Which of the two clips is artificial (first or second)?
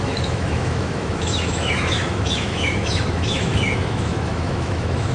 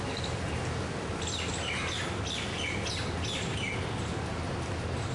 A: first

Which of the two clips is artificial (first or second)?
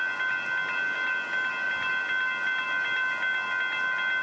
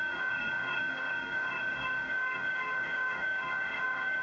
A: second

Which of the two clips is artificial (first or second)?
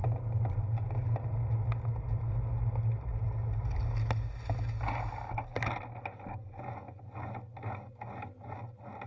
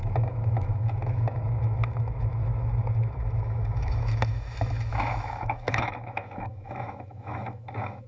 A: second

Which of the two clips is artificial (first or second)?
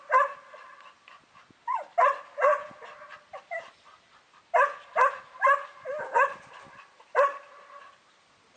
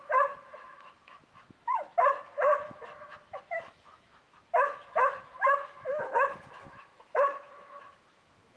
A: second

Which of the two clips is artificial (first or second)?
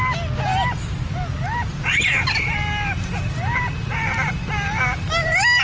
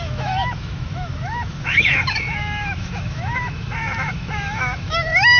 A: second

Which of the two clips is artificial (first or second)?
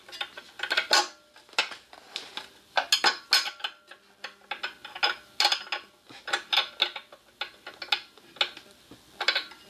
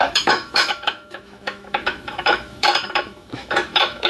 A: second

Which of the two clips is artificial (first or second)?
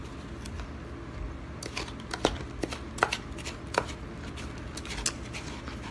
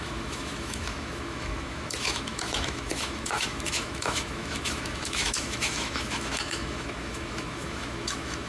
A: second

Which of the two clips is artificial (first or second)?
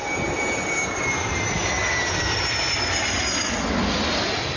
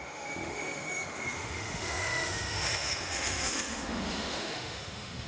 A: second